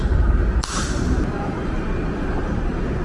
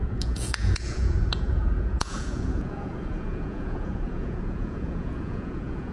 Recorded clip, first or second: first